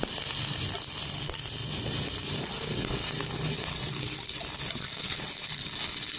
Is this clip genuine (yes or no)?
yes